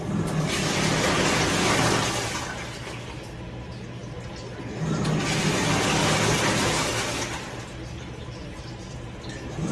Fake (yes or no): no